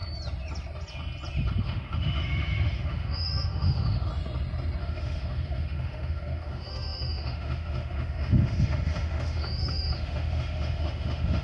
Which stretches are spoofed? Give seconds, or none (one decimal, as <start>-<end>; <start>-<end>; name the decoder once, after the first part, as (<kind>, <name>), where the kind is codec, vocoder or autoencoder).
1.6-4.1 (autoencoder, DAC-VAE); 4.8-11.4